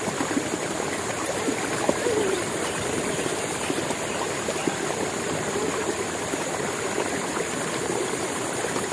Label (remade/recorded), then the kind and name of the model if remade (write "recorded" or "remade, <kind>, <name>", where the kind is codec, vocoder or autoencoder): recorded